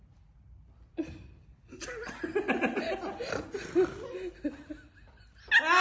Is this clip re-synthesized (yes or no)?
no